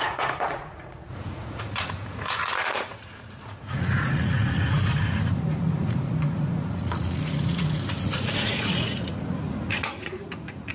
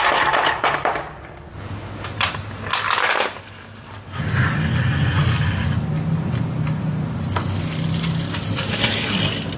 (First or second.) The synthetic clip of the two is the first